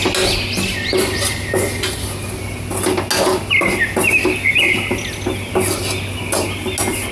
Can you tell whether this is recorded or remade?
recorded